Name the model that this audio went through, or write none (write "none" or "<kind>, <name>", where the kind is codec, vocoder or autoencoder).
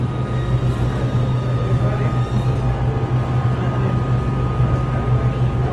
none